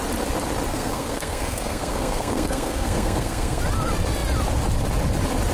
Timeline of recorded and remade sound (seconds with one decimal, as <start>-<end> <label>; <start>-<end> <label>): 0.0-0.7 recorded; 0.7-3.6 remade; 3.6-5.5 recorded